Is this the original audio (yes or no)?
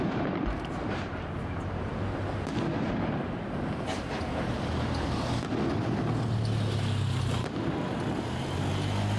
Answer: yes